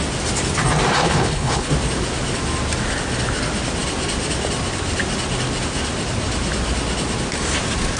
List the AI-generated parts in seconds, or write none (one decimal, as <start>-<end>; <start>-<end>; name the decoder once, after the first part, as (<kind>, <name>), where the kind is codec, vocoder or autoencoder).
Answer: 1.0-1.7 (codec, HILCodec)